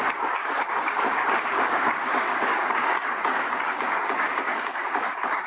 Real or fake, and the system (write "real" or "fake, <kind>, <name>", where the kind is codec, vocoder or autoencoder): fake, codec, DAC